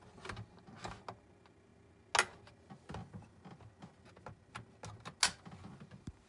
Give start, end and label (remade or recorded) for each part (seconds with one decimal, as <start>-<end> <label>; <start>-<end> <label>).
0.0-6.3 recorded